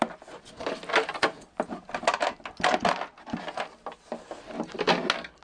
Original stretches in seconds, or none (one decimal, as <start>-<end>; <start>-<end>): 0.0-5.4